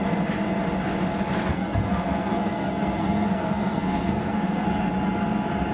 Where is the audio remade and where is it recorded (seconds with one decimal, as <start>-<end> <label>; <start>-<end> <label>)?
0.0-1.5 recorded; 1.5-4.9 remade; 4.9-5.7 recorded